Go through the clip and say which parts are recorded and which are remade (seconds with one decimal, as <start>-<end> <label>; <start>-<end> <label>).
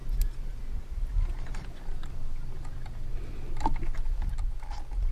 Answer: 0.0-5.1 recorded